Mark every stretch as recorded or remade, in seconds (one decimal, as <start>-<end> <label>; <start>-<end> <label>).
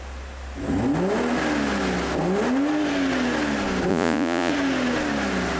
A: 0.0-3.9 recorded; 3.9-4.5 remade; 4.5-5.6 recorded